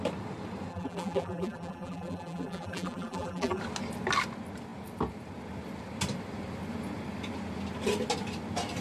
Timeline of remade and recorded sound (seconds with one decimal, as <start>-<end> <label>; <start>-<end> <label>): 0.0-0.7 recorded; 0.7-3.6 remade; 3.6-8.8 recorded